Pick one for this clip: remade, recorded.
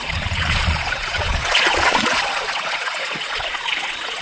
remade